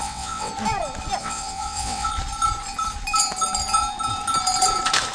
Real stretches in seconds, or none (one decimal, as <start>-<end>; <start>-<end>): 0.5-1.2; 2.1-5.1